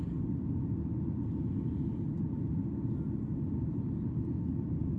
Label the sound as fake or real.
real